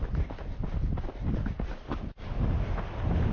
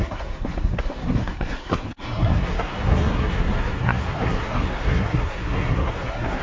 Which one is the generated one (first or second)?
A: second